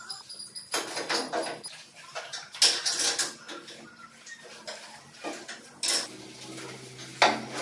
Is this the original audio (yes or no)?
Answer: yes